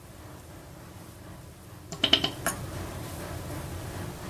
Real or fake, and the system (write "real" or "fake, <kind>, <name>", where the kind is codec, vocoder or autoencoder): real